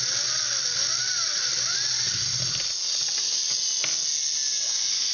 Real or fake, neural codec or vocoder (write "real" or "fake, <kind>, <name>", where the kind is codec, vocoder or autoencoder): real